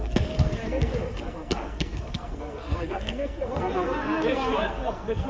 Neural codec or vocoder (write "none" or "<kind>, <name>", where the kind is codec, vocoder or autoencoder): codec, SNAC